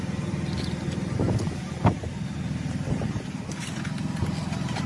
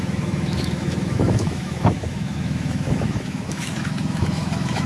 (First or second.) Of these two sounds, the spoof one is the second